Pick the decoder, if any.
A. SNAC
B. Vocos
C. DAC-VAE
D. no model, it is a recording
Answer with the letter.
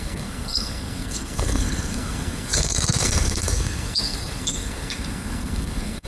A